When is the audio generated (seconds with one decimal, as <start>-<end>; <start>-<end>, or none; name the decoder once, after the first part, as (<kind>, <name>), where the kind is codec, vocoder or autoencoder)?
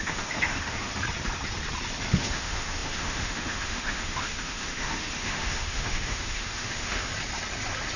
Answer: 0.0-0.9 (autoencoder, DAC-VAE); 2.2-7.1